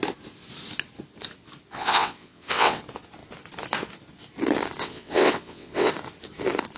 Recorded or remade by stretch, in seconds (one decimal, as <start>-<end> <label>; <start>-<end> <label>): 0.0-1.7 recorded; 1.7-2.8 remade; 2.8-4.8 recorded; 4.8-5.9 remade; 5.9-6.8 recorded